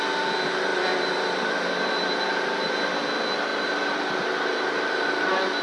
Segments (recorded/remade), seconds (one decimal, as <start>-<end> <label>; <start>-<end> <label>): 0.0-0.7 recorded; 0.7-2.3 remade; 2.3-5.6 recorded